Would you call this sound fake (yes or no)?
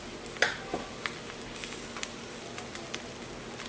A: no